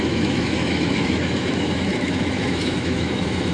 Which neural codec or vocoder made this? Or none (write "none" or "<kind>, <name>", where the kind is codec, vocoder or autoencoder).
autoencoder, DAC-VAE